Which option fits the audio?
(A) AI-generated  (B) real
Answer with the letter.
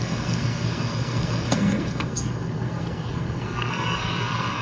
A